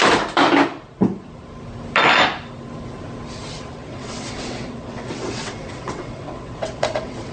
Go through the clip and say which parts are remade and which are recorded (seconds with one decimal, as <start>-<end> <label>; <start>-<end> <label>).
0.0-3.8 recorded; 3.8-7.3 remade